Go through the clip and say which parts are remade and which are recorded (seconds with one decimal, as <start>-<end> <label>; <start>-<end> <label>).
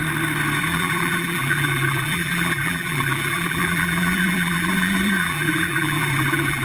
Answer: 0.0-0.6 recorded; 0.6-6.6 remade